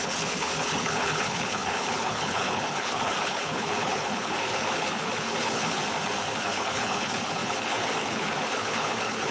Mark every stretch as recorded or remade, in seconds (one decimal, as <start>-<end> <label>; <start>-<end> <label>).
0.0-5.8 remade; 5.8-6.4 recorded; 6.4-9.3 remade